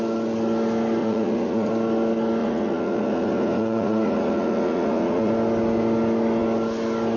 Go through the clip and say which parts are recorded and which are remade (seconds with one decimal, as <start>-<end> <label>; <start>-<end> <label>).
0.0-1.0 recorded; 1.0-1.7 remade; 1.7-2.4 recorded; 2.4-5.3 remade; 5.3-7.2 recorded